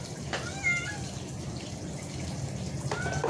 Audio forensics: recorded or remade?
recorded